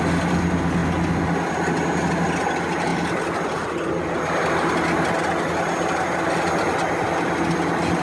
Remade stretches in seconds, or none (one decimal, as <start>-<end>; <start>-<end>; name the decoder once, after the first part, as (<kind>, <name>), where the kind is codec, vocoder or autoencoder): none